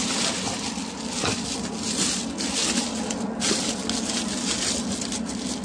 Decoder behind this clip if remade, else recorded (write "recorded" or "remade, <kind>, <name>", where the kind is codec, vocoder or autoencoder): recorded